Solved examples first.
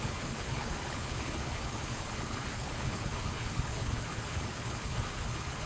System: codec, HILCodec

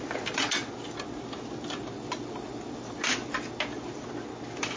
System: none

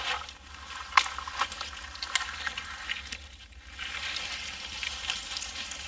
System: none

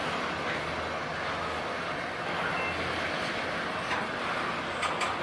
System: none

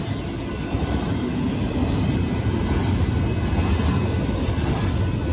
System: none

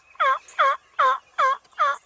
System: none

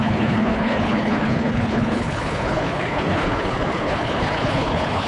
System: codec, HILCodec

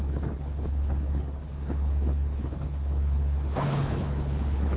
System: codec, HILCodec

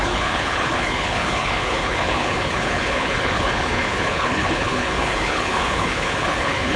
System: codec, HILCodec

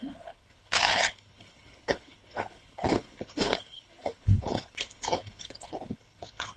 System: codec, HILCodec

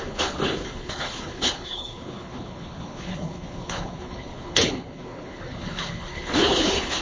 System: codec, HILCodec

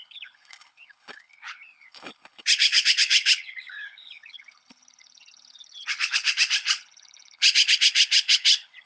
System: codec, HILCodec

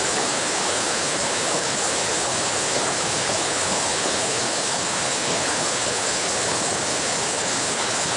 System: codec, HILCodec